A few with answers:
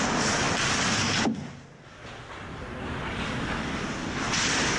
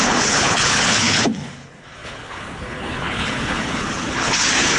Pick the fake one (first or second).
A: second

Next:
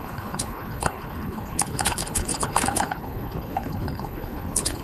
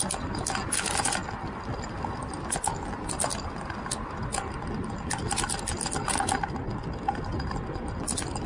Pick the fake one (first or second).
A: first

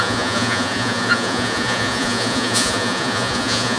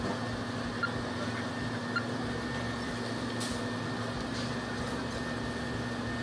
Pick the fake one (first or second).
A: first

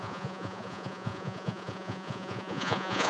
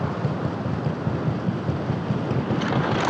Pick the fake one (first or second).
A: first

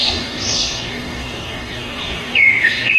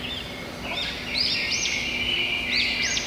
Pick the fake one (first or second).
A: first